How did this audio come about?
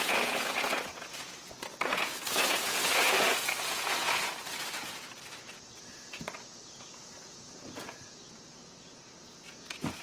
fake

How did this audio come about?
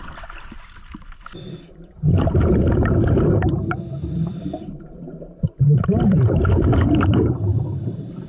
fake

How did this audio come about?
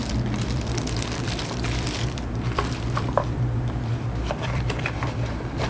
fake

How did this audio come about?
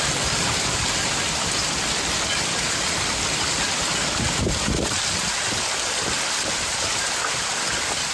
fake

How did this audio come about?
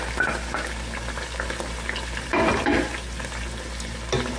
real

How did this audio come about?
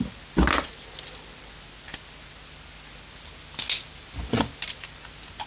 real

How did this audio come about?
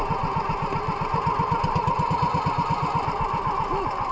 real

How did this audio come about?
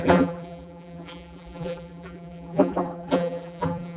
fake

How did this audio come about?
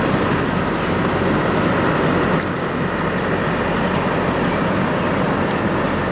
real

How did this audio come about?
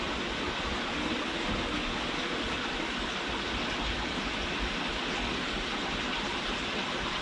real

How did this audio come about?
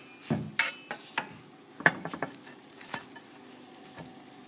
real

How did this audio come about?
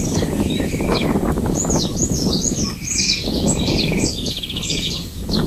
fake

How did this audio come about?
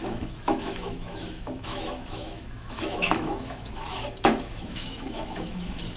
fake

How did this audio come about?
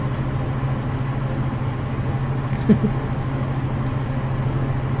real